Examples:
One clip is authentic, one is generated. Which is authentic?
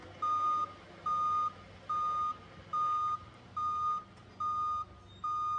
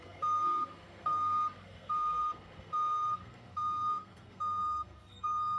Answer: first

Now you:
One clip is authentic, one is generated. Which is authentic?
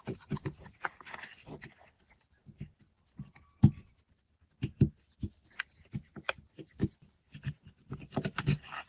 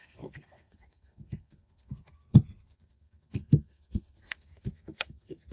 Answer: first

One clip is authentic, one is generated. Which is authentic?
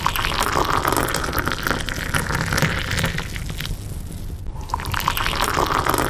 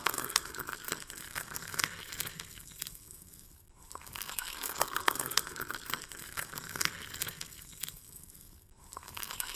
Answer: first